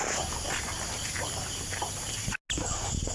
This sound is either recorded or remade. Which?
recorded